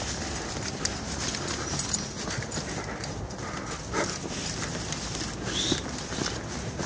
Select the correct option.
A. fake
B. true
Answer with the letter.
B